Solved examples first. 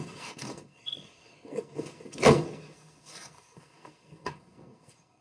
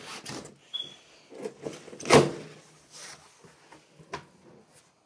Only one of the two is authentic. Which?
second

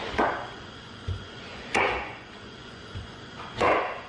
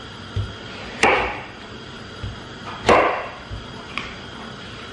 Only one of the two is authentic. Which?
second